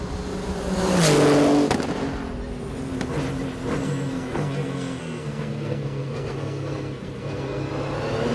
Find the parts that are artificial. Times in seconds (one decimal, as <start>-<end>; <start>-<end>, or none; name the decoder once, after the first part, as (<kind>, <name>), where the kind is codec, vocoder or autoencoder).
3.8-7.7 (codec, SNAC)